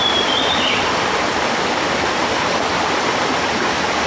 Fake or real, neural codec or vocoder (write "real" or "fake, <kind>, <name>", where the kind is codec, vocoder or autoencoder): real